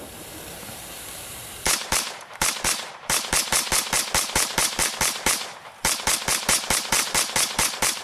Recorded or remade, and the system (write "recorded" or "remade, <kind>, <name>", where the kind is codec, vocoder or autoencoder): remade, vocoder, BigVGAN v2